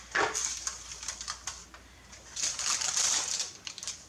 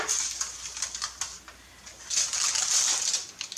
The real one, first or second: second